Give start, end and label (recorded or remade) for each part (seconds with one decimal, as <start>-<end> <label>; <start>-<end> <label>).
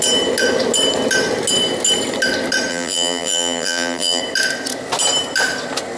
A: 0.0-2.7 recorded; 2.7-4.2 remade; 4.2-6.0 recorded